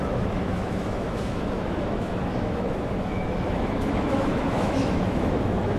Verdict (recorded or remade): remade